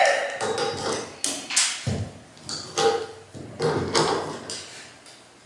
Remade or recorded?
recorded